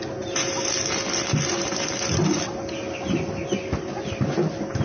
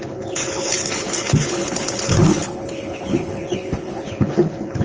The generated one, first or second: second